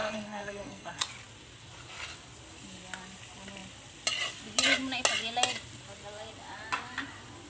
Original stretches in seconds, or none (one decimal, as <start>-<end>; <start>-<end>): 1.0-7.5